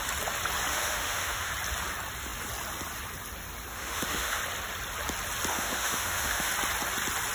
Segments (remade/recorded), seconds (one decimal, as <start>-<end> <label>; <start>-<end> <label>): 0.0-0.7 recorded; 0.7-1.5 remade; 1.5-3.7 recorded; 3.7-4.4 remade; 4.4-5.5 recorded; 5.5-6.5 remade; 6.5-7.3 recorded